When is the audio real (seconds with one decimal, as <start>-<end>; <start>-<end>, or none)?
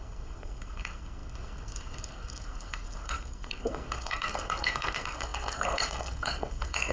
none